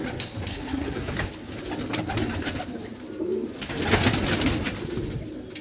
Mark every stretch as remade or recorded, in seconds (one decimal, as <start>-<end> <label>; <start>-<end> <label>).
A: 0.0-0.5 recorded; 0.5-1.1 remade; 1.1-5.6 recorded